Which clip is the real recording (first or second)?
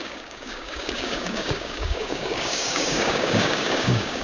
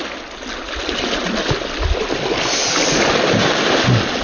second